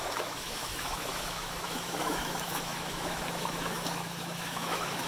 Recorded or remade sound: remade